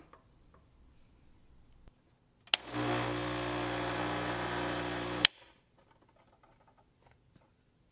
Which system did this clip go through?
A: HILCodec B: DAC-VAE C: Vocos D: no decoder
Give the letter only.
D